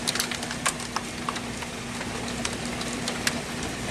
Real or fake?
real